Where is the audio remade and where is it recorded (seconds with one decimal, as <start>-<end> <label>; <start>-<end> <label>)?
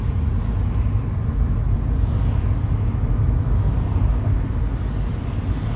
0.0-3.1 recorded; 3.1-3.7 remade; 3.7-5.8 recorded